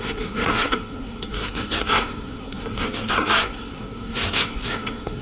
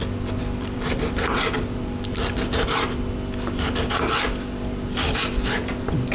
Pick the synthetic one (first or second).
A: first